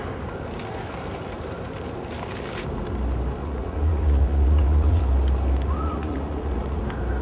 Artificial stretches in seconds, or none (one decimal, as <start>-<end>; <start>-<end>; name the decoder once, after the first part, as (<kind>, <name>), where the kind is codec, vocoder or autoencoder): 3.4-5.0 (vocoder, Vocos); 5.7-6.8